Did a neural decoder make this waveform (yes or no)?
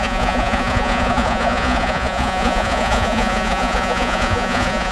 yes